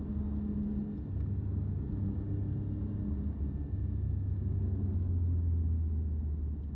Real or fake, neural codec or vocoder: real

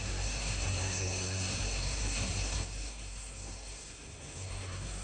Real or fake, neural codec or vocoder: fake, codec, SNAC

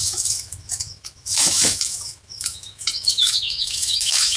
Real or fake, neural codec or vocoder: fake, autoencoder, DAC-VAE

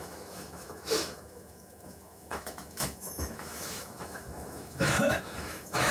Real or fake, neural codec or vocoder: fake, autoencoder, DAC-VAE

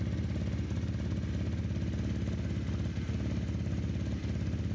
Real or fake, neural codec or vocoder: real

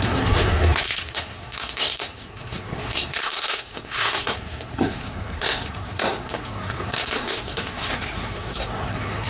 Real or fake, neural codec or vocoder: fake, codec, SNAC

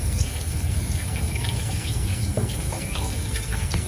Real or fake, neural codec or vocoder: fake, codec, SNAC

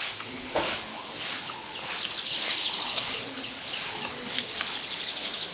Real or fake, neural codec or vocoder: fake, codec, HILCodec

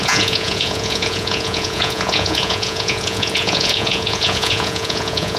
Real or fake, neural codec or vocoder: fake, vocoder, Vocos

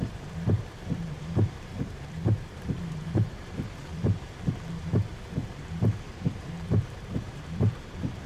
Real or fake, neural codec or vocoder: fake, vocoder, BigVGAN v2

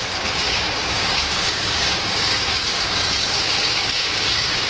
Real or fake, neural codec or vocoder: fake, codec, DAC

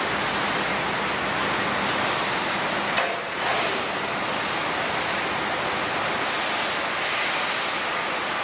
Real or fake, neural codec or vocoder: real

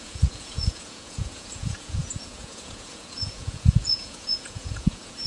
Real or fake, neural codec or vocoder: fake, vocoder, Vocos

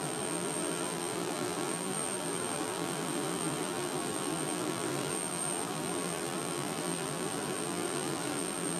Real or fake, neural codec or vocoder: fake, vocoder, BigVGAN v2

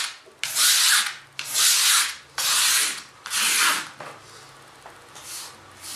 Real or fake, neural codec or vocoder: real